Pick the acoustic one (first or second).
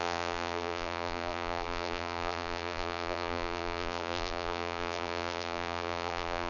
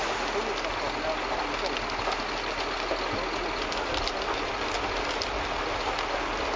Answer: second